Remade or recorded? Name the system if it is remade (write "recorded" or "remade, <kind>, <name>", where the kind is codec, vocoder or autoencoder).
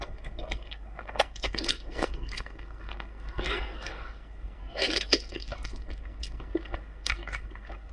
remade, codec, SNAC